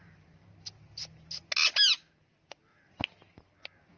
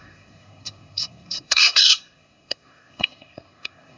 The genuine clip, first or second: first